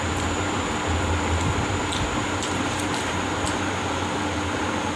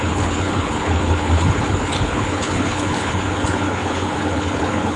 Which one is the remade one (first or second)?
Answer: second